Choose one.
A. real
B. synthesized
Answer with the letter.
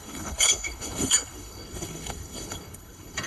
B